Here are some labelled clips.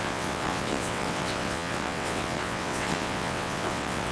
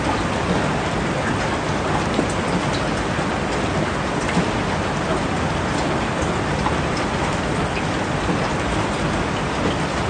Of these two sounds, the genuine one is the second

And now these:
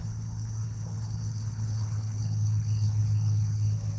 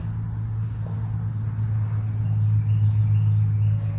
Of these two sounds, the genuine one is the second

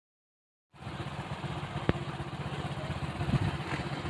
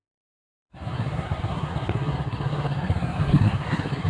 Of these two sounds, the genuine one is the first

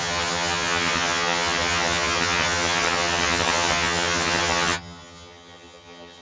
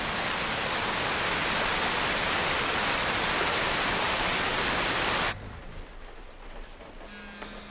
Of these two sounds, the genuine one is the second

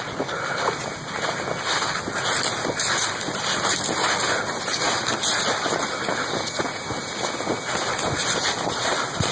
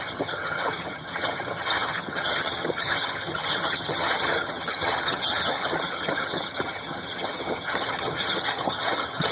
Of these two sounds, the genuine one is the first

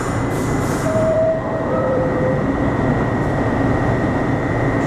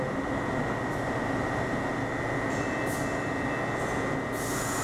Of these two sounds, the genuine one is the second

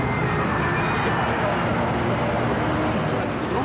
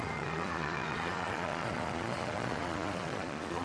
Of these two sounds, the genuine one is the first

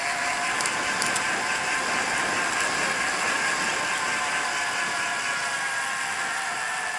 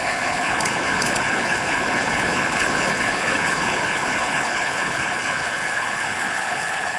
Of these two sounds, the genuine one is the first